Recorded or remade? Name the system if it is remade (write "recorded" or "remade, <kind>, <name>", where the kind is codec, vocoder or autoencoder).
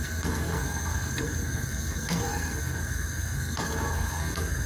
remade, codec, SNAC